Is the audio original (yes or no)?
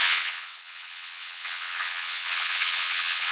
no